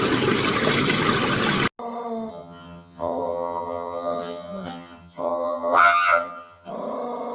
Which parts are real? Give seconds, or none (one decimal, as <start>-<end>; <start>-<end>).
0.0-2.3; 6.7-7.3